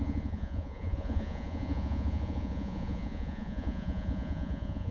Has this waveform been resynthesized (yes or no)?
yes